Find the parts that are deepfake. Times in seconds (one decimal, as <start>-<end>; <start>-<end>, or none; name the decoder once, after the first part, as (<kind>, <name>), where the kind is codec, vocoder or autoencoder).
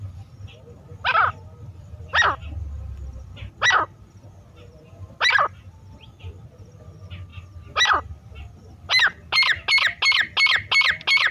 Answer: none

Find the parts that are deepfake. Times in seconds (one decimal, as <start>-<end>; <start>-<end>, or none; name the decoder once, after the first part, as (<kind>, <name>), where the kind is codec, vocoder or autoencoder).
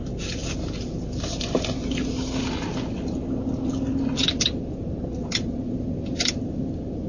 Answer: 6.1-7.1 (vocoder, BigVGAN v2)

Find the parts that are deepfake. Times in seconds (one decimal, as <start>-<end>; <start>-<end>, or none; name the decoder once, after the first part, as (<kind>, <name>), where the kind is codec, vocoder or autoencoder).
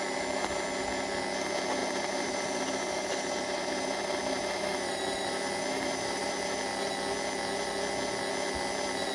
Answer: 1.8-6.6 (vocoder, BigVGAN v2)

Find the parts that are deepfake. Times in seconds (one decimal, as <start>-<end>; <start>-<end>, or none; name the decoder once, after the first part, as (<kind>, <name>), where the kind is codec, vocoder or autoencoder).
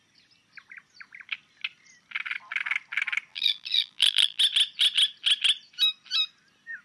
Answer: 3.3-4.4 (vocoder, BigVGAN v2)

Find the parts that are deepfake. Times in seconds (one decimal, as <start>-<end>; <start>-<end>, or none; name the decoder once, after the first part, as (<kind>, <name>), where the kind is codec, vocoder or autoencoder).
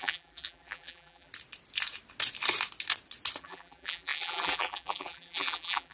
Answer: 0.0-1.3 (vocoder, BigVGAN v2); 3.4-5.9